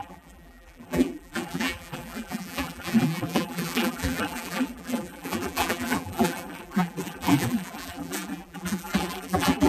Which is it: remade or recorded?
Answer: remade